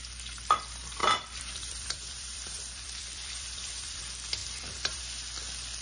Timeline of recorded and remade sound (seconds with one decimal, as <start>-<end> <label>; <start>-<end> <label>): 0.0-1.0 recorded; 1.0-4.0 remade; 4.0-4.4 recorded; 4.4-5.0 remade; 5.0-5.8 recorded